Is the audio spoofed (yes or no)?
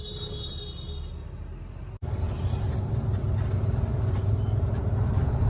no